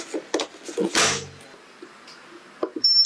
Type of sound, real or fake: real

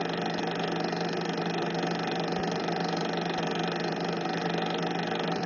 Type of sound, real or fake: real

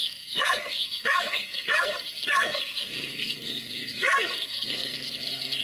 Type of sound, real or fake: fake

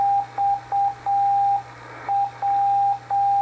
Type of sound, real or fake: real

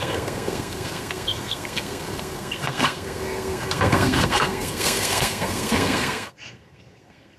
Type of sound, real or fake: fake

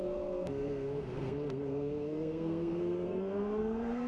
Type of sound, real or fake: fake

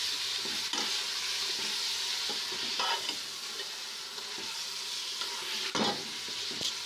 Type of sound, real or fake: real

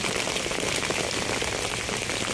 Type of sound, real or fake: real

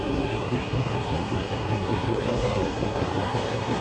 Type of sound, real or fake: fake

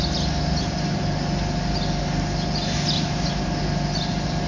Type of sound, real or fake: real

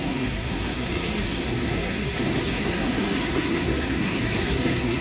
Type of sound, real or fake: fake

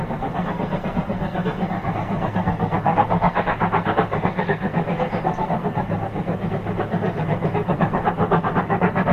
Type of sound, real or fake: fake